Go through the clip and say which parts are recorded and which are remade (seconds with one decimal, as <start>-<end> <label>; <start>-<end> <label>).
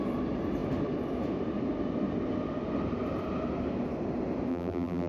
0.0-4.5 recorded; 4.5-5.1 remade